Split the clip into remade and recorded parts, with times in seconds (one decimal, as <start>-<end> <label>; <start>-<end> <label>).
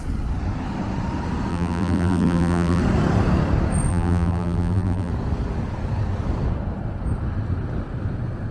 0.0-1.5 recorded; 1.5-2.8 remade; 2.8-3.9 recorded; 3.9-5.1 remade; 5.1-8.5 recorded